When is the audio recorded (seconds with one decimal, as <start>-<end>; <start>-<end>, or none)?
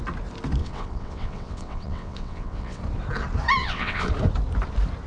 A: 0.0-0.6; 2.8-3.6; 4.1-5.1